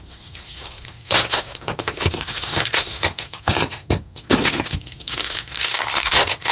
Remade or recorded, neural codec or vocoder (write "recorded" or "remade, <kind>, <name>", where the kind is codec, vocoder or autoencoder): remade, codec, SNAC